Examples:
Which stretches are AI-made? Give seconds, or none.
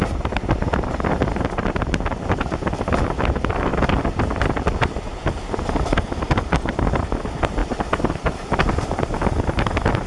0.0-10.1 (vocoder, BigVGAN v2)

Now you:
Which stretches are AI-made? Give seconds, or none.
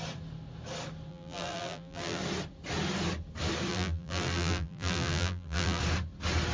1.1-2.2 (vocoder, BigVGAN v2); 3.7-5.8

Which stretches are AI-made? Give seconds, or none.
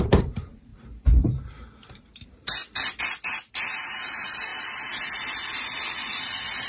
0.0-0.7 (vocoder, BigVGAN v2); 1.2-2.6; 4.1-4.5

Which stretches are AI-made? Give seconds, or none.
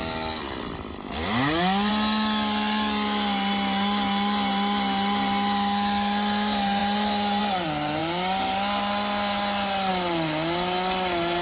none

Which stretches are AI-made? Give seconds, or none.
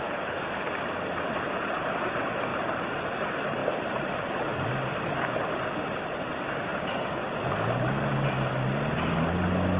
2.5-3.1 (vocoder, BigVGAN v2); 6.7-7.2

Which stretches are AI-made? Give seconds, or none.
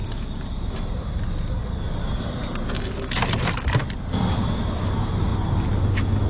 3.8-4.8 (vocoder, BigVGAN v2)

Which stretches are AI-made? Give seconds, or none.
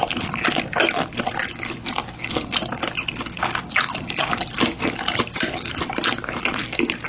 none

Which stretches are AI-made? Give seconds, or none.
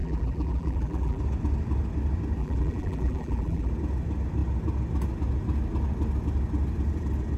0.0-1.2 (vocoder, BigVGAN v2); 2.4-3.7